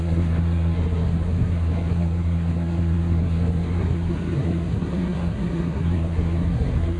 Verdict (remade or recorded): remade